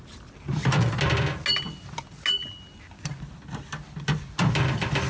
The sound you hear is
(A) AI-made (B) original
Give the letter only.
B